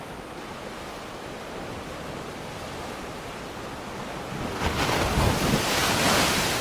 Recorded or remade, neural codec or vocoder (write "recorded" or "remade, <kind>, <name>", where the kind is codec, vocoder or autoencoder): recorded